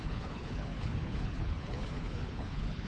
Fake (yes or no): yes